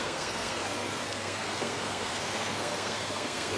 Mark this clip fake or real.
fake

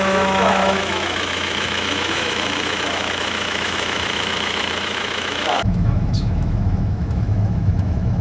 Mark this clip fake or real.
fake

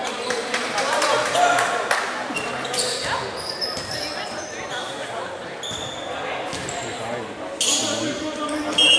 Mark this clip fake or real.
real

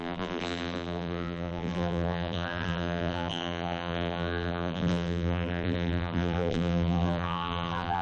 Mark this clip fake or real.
fake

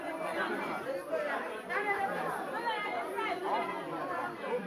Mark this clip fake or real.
fake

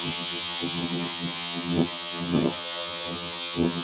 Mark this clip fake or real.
fake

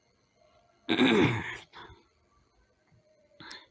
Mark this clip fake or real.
real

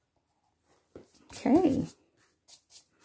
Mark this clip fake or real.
real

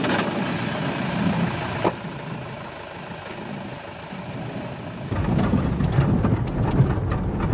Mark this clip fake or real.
real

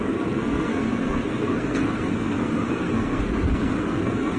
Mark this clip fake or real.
fake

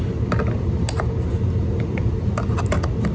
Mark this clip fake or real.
real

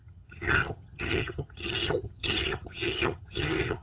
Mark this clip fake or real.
fake